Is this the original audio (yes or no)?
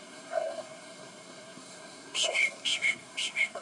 no